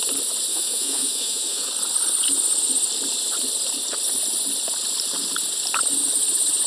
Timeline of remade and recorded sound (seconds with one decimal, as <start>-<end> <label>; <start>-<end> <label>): 0.0-0.5 recorded; 0.5-1.7 remade; 1.7-6.7 recorded